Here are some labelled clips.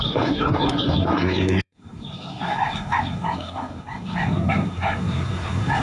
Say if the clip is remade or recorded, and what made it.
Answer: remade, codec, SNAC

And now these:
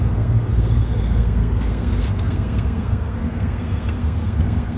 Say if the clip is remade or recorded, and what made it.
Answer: remade, codec, SNAC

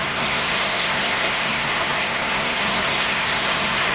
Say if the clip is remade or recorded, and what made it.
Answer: remade, codec, SNAC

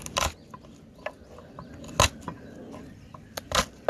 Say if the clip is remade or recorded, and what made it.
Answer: recorded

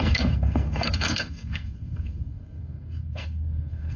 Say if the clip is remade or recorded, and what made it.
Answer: remade, codec, SNAC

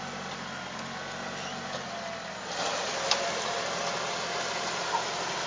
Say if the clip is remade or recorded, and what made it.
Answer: recorded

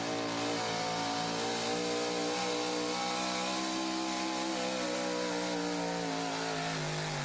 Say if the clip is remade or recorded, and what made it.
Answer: recorded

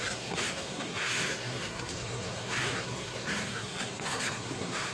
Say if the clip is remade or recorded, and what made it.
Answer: remade, codec, SNAC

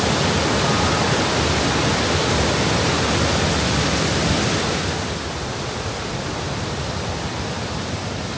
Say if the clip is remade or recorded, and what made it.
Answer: recorded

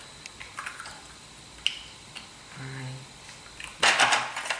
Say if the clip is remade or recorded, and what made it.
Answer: recorded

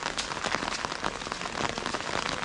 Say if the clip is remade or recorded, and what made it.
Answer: recorded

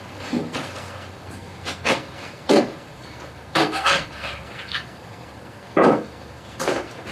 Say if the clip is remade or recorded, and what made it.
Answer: remade, codec, SNAC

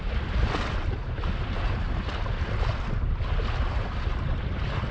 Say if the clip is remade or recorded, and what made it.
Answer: recorded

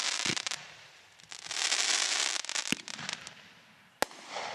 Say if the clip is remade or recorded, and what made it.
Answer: recorded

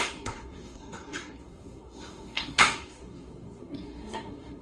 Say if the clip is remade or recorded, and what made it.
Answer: remade, codec, SNAC